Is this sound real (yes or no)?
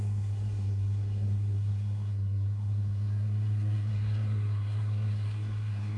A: no